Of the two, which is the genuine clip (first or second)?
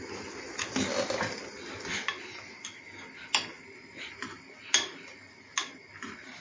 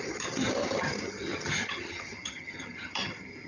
first